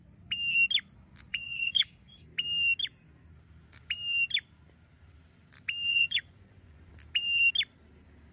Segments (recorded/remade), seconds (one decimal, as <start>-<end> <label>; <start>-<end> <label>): 0.0-1.3 recorded; 1.3-1.9 remade; 1.9-5.9 recorded; 5.9-6.9 remade; 6.9-8.3 recorded